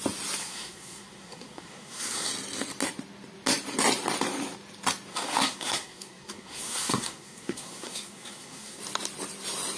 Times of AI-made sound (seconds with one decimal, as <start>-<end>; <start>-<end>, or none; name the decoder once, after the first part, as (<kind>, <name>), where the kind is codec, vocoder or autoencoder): 0.4-2.3 (codec, SNAC); 5.1-8.8